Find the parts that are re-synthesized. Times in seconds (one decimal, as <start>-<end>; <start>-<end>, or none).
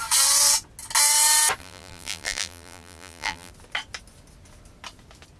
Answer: 1.6-3.5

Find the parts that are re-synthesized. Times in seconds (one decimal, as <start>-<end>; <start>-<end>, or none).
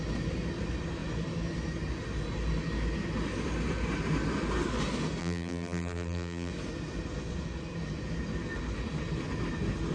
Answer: 5.2-6.5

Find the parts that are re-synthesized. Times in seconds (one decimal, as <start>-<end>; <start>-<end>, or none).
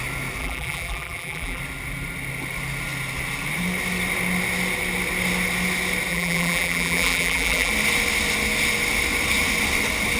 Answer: 0.4-1.6; 6.1-7.7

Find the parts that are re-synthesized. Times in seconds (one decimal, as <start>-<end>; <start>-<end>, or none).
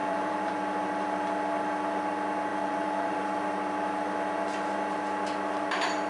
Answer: 0.0-0.5; 2.5-3.2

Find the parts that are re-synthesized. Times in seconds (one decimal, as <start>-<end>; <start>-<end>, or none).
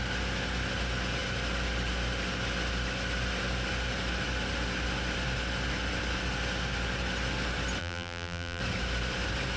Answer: 7.8-8.6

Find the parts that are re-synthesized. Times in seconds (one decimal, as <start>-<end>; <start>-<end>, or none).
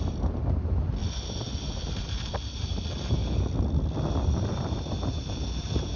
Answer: 0.0-1.0; 1.9-3.2; 4.5-6.0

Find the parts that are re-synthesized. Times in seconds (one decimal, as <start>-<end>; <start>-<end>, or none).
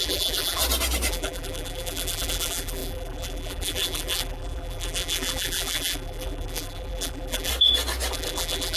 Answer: 0.0-0.6; 1.1-7.5; 8.1-8.8